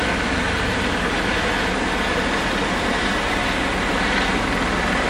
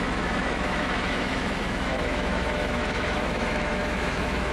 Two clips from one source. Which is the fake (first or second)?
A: second